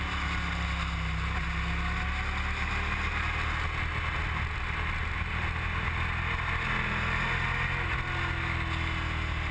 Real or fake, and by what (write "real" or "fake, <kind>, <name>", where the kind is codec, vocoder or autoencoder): real